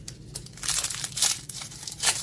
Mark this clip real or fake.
fake